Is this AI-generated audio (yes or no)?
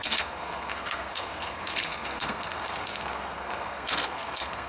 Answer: yes